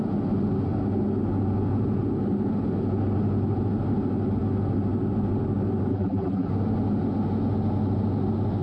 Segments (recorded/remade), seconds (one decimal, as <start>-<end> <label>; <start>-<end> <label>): 0.0-5.9 recorded; 5.9-6.5 remade; 6.5-8.6 recorded